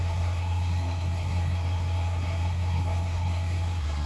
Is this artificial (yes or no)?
yes